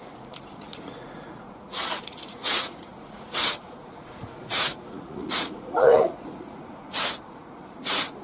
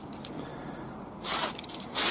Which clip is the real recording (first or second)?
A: second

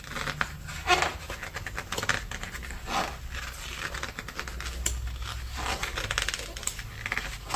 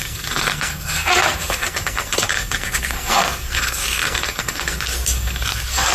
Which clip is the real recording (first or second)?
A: first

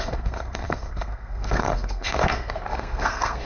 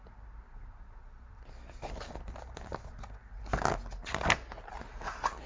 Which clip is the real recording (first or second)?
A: second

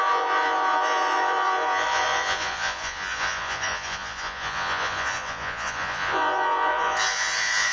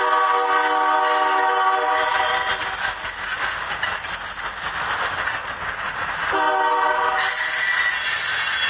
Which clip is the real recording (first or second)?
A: second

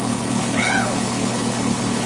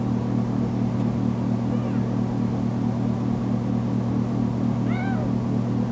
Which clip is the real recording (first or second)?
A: second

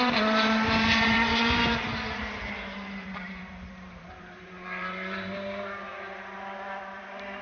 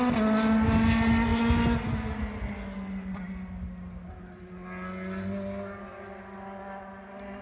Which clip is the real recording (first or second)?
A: second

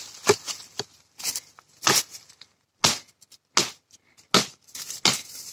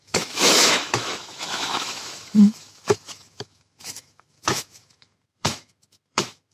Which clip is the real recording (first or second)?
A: first